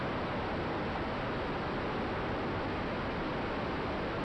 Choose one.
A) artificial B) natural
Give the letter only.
B